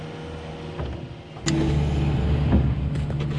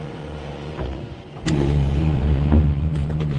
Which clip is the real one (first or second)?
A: first